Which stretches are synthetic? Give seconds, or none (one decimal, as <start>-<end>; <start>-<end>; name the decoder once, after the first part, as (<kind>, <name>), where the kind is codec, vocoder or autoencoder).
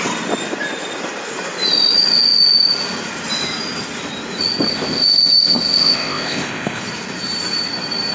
4.7-6.8 (codec, ZipCodec)